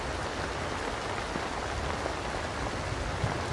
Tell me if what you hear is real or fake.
real